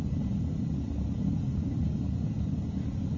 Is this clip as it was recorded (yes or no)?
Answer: yes